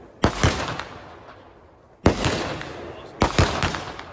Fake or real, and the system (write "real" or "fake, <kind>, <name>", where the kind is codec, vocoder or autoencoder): real